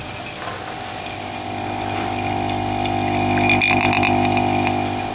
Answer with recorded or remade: recorded